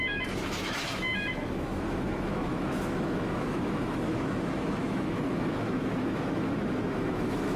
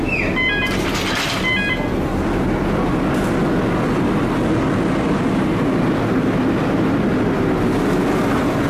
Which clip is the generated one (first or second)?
first